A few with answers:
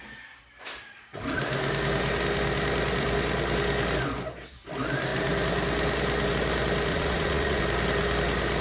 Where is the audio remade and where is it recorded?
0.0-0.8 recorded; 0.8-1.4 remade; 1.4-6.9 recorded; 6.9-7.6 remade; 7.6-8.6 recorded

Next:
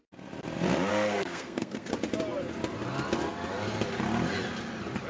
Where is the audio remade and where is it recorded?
0.0-0.9 recorded; 0.9-1.9 remade; 1.9-5.1 recorded

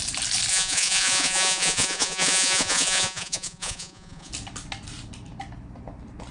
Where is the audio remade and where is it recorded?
0.0-0.5 recorded; 0.5-4.3 remade; 4.3-6.3 recorded

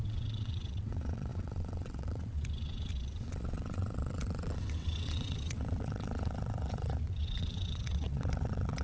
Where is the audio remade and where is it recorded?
0.0-8.8 remade

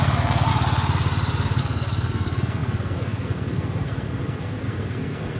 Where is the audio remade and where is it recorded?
0.0-0.5 remade; 0.5-1.6 recorded; 1.6-5.4 remade

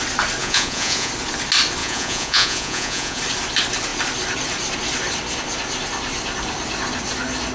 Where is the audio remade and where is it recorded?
0.0-0.4 recorded; 0.4-1.1 remade; 1.1-1.8 recorded; 1.8-3.2 remade; 3.2-7.5 recorded

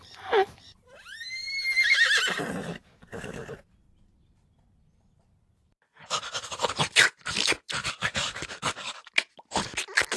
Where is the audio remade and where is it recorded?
0.0-2.8 recorded; 2.8-3.5 remade; 3.5-7.8 recorded; 7.8-9.1 remade; 9.1-10.2 recorded

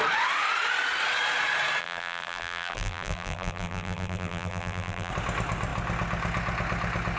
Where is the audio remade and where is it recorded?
0.0-1.8 recorded; 1.8-5.1 remade; 5.1-7.2 recorded